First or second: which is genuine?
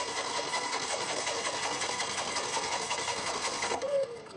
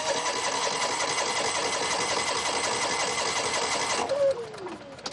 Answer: second